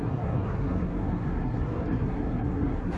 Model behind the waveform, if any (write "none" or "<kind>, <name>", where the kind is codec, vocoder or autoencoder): codec, SNAC